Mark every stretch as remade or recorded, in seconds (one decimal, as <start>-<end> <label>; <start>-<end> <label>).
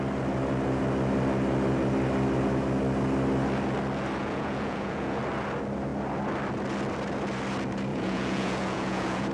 0.0-4.2 recorded; 4.2-5.2 remade; 5.2-7.9 recorded; 7.9-9.3 remade